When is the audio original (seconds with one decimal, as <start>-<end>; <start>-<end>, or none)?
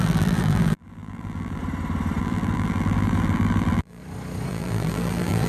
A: 1.6-2.2; 4.0-4.5